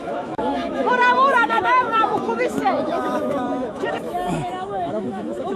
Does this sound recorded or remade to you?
remade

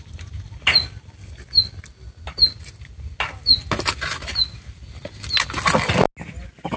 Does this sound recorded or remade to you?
recorded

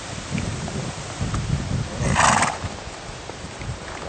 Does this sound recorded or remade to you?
recorded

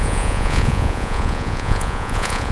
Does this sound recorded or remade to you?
remade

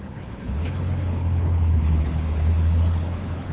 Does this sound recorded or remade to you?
remade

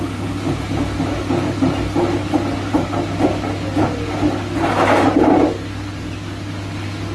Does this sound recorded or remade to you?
recorded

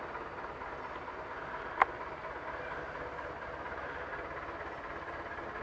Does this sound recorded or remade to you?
recorded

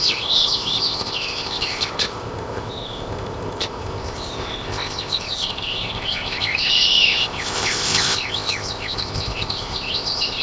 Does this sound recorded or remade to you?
remade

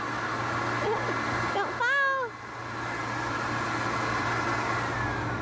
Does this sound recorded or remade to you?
recorded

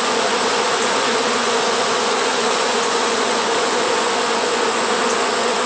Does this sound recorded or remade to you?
remade